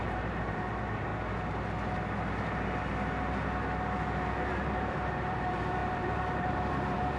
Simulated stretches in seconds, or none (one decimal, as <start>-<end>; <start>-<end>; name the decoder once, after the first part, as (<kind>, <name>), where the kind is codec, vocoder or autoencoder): 0.0-1.1 (vocoder, BigVGAN v2); 4.5-7.2